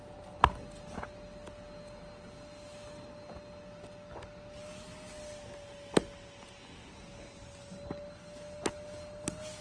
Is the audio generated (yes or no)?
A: no